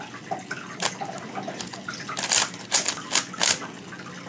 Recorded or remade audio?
recorded